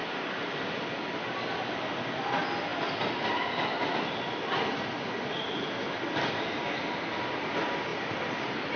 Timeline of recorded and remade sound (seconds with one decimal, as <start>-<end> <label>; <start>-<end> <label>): 0.0-7.9 recorded; 7.9-8.8 remade